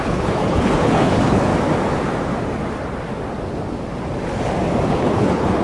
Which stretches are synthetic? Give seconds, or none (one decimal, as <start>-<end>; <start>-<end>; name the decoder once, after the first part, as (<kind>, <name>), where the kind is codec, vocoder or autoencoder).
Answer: 0.0-1.5 (codec, HILCodec); 4.9-5.6